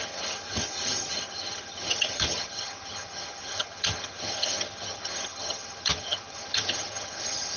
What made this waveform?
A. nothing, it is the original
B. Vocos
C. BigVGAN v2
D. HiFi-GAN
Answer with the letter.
D